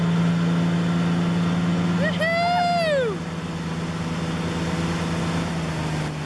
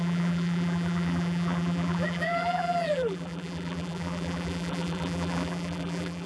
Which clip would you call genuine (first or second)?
first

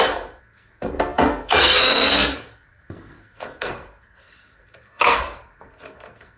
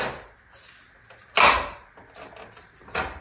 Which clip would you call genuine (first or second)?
second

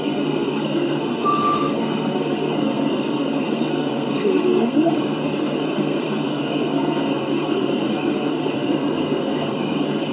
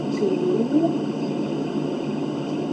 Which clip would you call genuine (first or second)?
second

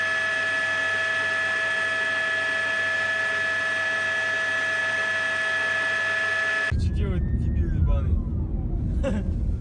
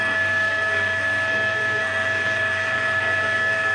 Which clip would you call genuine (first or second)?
first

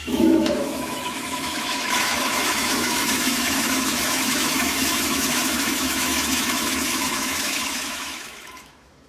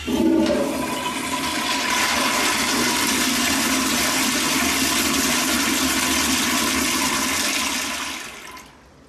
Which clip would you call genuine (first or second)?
second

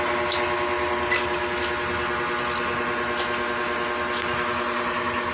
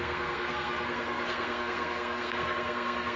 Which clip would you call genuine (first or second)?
first